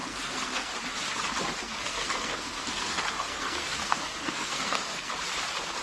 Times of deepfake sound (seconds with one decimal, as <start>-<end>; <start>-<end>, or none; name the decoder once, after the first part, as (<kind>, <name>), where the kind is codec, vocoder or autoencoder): 0.0-0.7 (codec, SNAC); 1.6-5.1